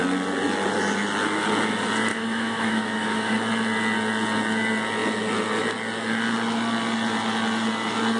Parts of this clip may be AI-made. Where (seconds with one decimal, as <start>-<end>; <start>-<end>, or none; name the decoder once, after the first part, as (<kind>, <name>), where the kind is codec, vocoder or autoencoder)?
2.1-3.3 (autoencoder, DAC-VAE)